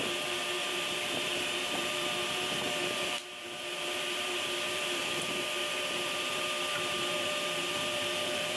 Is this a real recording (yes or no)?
no